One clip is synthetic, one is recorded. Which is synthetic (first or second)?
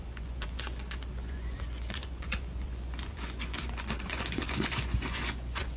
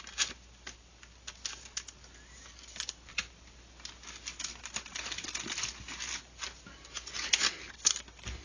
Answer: first